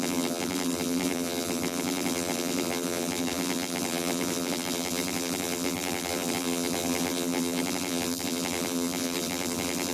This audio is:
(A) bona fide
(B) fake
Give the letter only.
B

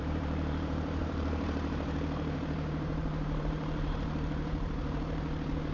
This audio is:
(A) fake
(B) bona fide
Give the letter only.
A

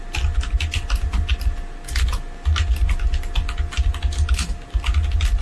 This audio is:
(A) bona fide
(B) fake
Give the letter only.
A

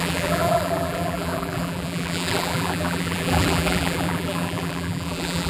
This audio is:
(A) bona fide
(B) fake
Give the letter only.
B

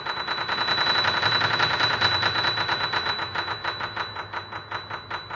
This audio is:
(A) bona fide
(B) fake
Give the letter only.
A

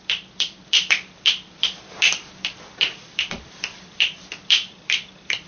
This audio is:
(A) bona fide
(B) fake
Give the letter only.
B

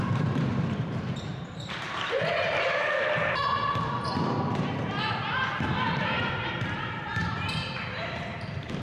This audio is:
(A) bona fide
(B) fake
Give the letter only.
B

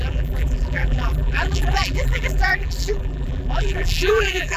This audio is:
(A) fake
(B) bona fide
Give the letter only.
A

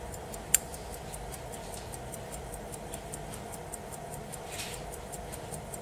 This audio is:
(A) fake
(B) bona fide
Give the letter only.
B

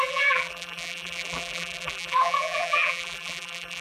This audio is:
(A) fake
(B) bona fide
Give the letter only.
A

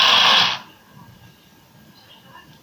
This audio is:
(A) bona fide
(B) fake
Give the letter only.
A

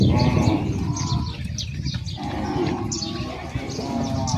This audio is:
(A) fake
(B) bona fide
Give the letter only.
B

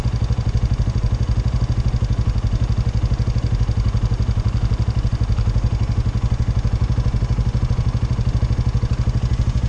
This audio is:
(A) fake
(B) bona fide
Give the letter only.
B